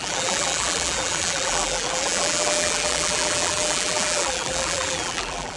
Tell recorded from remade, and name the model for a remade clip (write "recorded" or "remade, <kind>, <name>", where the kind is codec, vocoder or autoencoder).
remade, vocoder, BigVGAN v2